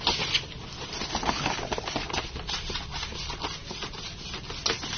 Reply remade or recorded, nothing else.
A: recorded